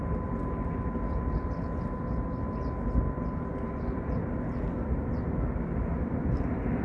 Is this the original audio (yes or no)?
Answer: yes